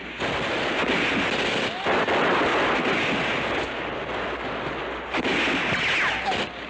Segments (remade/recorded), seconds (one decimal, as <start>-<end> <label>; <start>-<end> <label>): 0.0-6.7 recorded